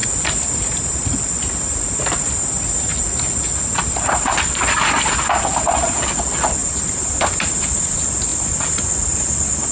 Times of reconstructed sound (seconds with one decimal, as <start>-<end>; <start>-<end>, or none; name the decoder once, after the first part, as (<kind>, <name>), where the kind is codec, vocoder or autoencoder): none